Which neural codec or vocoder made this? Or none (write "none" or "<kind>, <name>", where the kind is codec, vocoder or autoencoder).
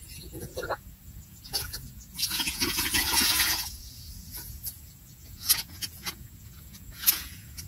vocoder, Vocos